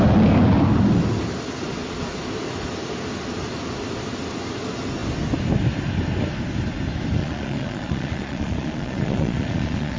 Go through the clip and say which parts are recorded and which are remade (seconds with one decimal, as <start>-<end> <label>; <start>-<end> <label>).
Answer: 0.0-7.2 recorded; 7.2-10.0 remade